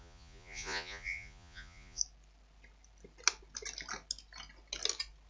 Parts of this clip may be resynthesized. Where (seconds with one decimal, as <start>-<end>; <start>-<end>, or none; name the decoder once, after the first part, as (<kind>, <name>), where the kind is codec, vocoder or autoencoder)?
0.0-2.0 (vocoder, Vocos)

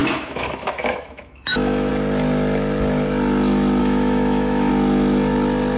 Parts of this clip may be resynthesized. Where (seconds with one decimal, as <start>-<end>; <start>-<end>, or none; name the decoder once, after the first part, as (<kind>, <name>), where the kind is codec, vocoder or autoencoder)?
0.0-1.9 (autoencoder, DAC-VAE); 3.8-4.7